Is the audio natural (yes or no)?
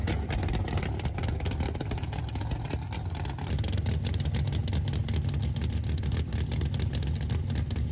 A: yes